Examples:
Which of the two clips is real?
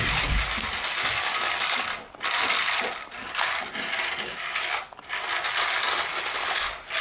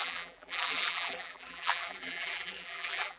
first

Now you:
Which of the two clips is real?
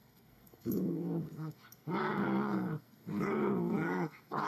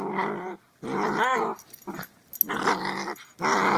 second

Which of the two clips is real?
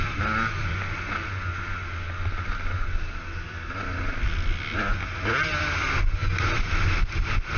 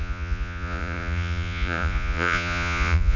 first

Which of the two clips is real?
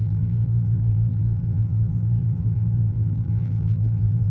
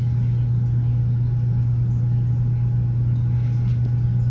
second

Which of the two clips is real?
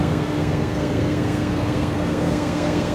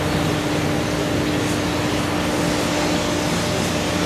second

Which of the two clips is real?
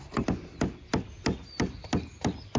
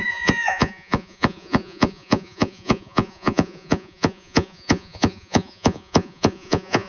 first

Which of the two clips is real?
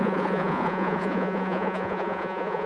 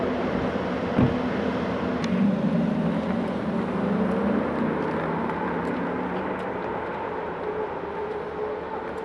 second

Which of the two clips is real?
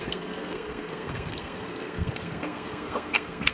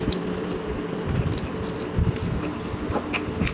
second